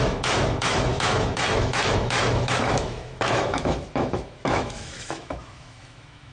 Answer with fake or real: fake